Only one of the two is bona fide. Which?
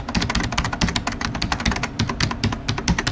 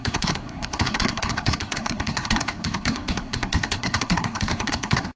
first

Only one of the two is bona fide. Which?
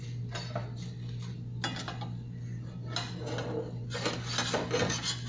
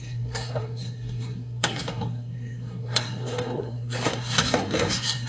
first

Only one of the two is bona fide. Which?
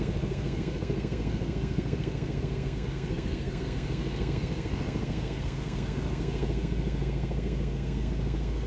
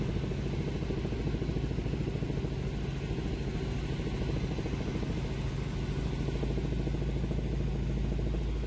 second